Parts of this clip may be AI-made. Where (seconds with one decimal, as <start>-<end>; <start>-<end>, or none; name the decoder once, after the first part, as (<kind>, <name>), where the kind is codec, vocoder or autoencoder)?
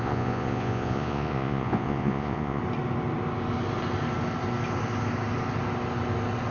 0.0-2.6 (vocoder, Vocos)